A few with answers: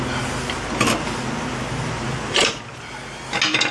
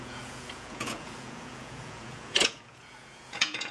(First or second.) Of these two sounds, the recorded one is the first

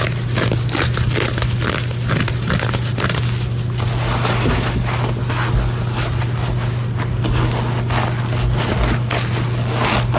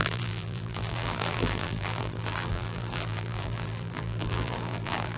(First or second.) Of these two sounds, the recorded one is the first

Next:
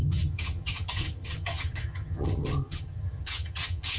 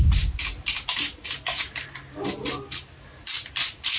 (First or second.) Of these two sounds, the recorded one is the second